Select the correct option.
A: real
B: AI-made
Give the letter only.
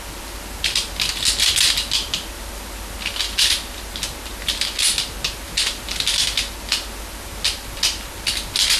A